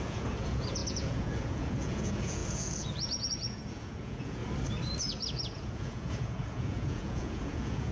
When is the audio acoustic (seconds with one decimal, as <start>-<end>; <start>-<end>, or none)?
4.4-5.0